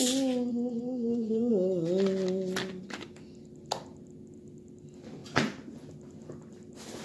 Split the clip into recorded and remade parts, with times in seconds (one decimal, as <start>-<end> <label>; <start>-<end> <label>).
0.0-0.5 recorded; 0.5-1.5 remade; 1.5-7.0 recorded

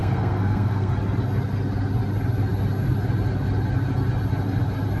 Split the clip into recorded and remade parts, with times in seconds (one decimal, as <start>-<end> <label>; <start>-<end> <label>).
0.0-0.9 remade; 0.9-5.0 recorded

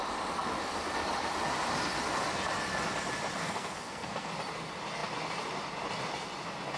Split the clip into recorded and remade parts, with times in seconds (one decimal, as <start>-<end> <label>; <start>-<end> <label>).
0.0-3.4 recorded; 3.4-4.3 remade; 4.3-6.8 recorded